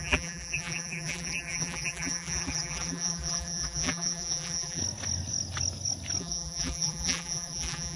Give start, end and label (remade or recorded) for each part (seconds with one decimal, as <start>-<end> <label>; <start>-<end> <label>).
0.0-4.8 remade; 4.8-6.2 recorded; 6.2-8.0 remade